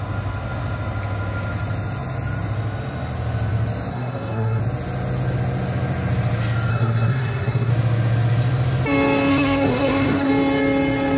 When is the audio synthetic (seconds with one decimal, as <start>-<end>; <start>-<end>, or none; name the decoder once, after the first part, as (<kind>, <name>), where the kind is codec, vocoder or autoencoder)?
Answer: 3.9-4.6 (codec, SNAC); 6.7-7.7; 9.3-10.3